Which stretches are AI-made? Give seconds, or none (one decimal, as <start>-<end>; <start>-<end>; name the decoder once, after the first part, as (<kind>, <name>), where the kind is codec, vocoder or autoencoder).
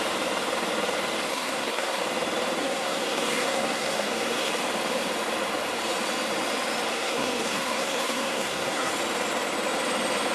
1.3-2.0 (codec, SNAC); 2.6-4.5; 6.9-8.9